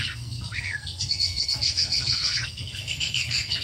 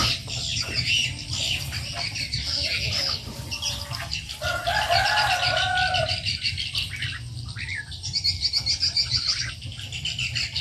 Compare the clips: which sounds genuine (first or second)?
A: second